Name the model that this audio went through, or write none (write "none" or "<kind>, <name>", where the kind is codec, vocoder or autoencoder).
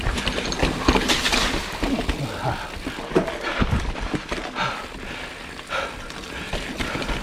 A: none